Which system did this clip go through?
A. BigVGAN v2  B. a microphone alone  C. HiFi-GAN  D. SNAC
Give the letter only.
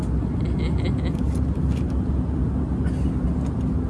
B